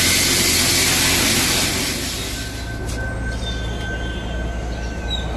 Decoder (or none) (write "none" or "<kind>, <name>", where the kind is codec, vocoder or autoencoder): none